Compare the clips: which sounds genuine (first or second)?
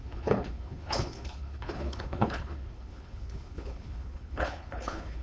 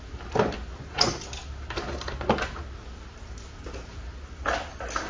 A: second